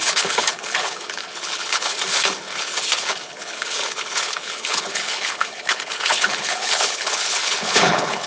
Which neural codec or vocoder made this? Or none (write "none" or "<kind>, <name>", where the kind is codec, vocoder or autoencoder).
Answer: codec, HILCodec